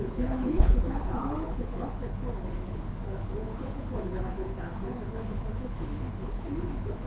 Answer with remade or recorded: remade